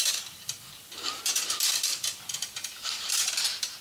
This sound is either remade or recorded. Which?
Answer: remade